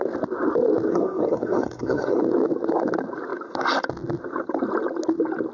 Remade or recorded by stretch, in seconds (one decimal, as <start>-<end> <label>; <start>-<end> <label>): 0.0-0.9 recorded; 0.9-2.2 remade; 2.2-5.5 recorded